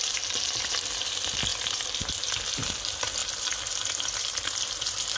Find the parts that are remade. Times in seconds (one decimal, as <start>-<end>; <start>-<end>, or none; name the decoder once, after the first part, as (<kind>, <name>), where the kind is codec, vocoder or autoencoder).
3.2-5.2 (vocoder, BigVGAN v2)